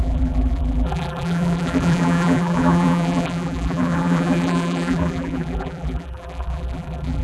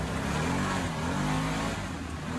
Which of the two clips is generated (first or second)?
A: first